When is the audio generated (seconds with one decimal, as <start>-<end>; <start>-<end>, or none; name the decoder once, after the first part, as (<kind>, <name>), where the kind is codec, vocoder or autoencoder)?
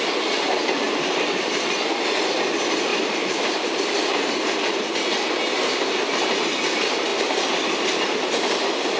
0.5-1.7 (vocoder, BigVGAN v2); 2.9-4.9